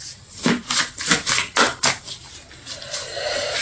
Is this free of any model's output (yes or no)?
yes